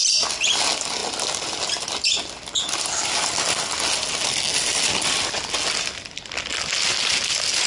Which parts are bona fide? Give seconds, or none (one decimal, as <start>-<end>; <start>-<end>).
0.0-7.7